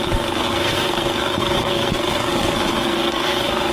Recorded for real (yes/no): no